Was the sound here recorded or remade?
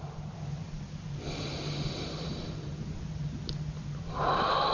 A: recorded